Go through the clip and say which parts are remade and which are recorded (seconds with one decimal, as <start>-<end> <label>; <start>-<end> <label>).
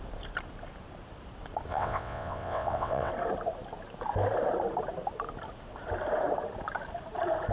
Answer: 0.0-1.7 recorded; 1.7-3.1 remade; 3.1-7.5 recorded